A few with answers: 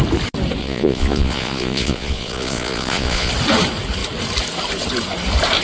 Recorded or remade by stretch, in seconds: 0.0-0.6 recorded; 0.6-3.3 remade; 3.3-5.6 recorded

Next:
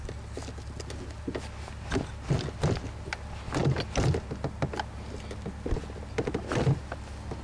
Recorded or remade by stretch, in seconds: 0.0-7.4 recorded

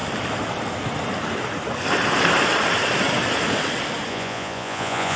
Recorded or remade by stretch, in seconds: 0.0-4.1 recorded; 4.1-5.2 remade

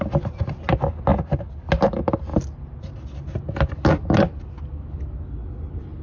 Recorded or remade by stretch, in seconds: 0.0-6.0 recorded

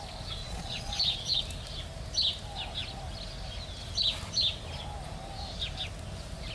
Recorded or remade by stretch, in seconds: 0.0-0.4 recorded; 0.4-1.4 remade; 1.4-6.5 recorded

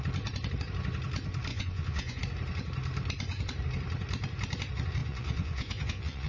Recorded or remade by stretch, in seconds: 0.0-1.5 recorded; 1.5-2.2 remade; 2.2-5.0 recorded; 5.0-6.3 remade

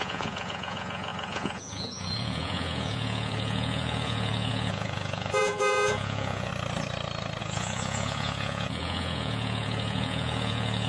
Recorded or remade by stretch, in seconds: 0.0-6.5 remade; 6.5-7.4 recorded; 7.4-10.9 remade

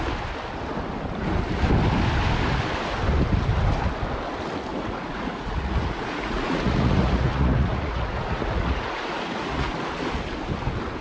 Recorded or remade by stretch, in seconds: 0.0-4.7 recorded; 4.7-9.7 remade; 9.7-11.0 recorded